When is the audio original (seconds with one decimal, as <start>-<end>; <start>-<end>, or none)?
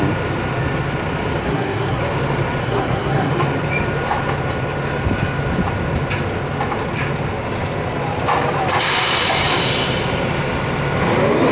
0.0-1.4; 2.0-2.6; 3.3-11.5